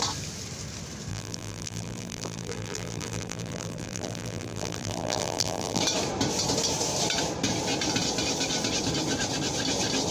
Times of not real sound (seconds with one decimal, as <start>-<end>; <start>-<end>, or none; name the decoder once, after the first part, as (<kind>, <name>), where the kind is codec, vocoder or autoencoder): 1.1-5.8 (vocoder, BigVGAN v2)